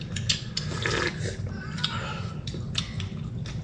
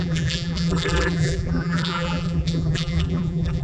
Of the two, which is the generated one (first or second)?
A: second